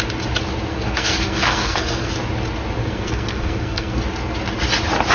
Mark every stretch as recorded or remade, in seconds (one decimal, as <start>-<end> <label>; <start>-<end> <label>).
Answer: 0.0-0.7 recorded; 0.7-2.1 remade; 2.1-2.8 recorded; 2.8-4.0 remade; 4.0-5.1 recorded